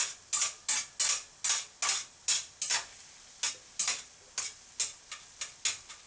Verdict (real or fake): real